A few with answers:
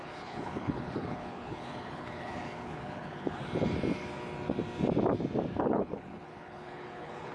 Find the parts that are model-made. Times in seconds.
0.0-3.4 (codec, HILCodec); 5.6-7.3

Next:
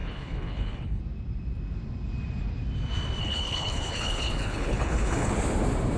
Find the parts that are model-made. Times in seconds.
0.0-1.0 (codec, HILCodec); 3.2-5.3